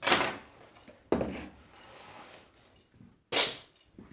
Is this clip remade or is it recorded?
recorded